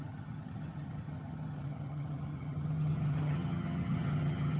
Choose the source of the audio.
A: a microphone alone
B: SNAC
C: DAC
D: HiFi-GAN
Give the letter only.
D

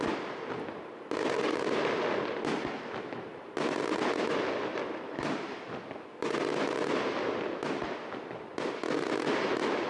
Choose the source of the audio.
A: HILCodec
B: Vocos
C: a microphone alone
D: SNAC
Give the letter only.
C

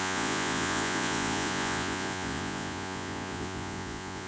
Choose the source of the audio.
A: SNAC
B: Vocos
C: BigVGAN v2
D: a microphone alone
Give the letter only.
B